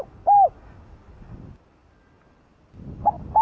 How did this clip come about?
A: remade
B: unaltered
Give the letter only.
B